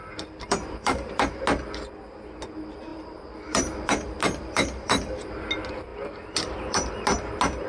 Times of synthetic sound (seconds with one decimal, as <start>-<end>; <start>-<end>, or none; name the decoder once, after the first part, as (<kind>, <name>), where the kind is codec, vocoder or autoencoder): 0.0-1.3 (vocoder, BigVGAN v2); 2.9-5.2; 5.9-6.9